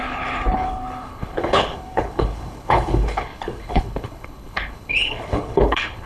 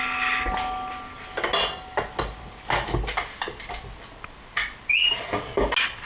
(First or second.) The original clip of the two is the second